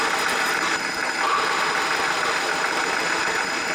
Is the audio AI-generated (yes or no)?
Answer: no